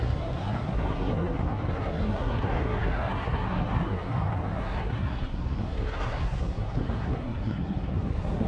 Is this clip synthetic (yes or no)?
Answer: yes